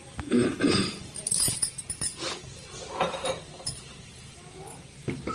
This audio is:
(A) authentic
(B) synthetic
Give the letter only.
B